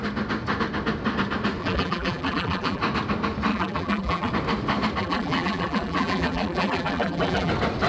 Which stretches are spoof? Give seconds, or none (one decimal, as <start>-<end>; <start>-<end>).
1.6-2.8; 3.5-4.3; 5.0-7.5